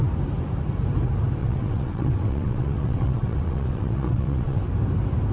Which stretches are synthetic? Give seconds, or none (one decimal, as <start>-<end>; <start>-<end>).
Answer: 1.4-4.6